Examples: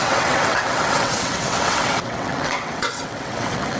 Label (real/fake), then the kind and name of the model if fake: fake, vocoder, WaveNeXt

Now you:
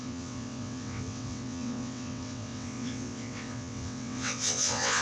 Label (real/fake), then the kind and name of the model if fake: fake, vocoder, WaveNeXt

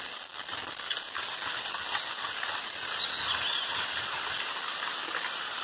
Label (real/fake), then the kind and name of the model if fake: real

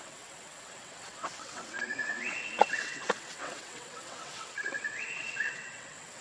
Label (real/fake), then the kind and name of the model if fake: fake, vocoder, WaveNeXt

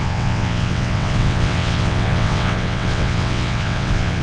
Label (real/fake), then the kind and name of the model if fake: fake, vocoder, WaveNeXt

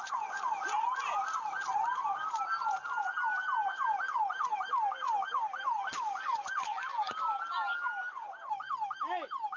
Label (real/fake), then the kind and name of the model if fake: real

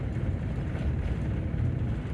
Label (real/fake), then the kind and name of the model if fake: real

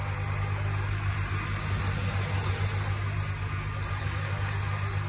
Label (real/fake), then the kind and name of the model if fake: real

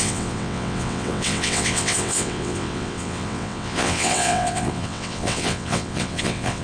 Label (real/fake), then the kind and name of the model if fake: fake, vocoder, WaveNeXt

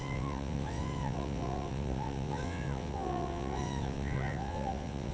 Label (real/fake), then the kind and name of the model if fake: fake, vocoder, WaveNeXt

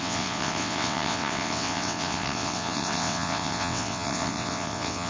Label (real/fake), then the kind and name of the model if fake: fake, vocoder, WaveNeXt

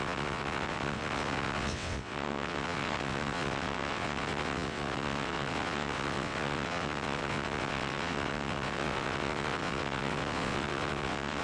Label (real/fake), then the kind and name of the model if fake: fake, vocoder, WaveNeXt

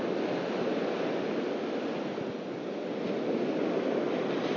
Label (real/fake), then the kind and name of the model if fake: real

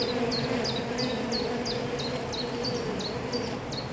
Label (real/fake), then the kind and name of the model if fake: real